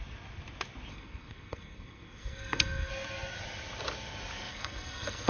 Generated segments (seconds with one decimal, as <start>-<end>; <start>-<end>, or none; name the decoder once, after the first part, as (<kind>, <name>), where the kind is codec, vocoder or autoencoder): 0.9-2.9 (codec, SNAC); 4.5-5.3